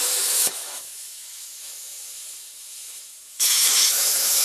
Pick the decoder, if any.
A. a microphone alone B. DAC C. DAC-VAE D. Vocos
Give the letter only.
C